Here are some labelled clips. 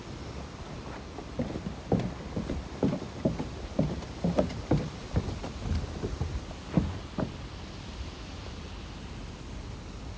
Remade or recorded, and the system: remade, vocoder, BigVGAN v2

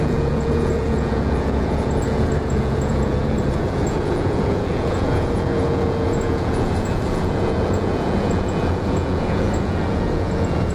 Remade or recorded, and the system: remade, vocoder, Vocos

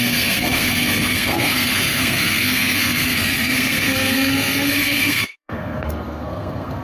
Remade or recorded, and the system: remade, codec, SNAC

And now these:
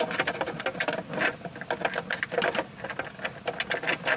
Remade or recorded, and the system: recorded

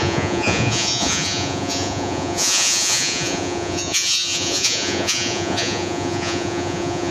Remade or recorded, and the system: remade, vocoder, Vocos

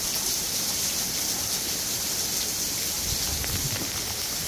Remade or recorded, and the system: recorded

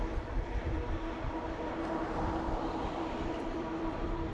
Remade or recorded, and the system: remade, vocoder, BigVGAN v2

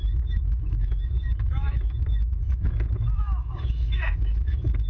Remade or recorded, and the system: remade, autoencoder, DAC-VAE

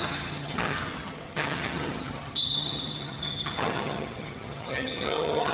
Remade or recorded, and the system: remade, vocoder, HiFi-GAN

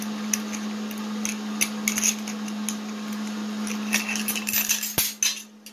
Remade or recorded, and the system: recorded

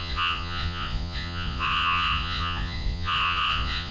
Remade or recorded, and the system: remade, vocoder, Vocos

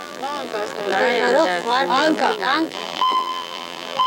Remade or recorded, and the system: remade, vocoder, BigVGAN v2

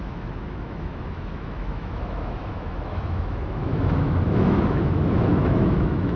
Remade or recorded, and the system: remade, autoencoder, DAC-VAE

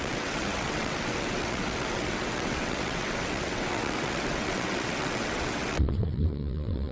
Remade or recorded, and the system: remade, vocoder, WaveNeXt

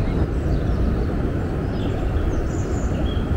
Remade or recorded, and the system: recorded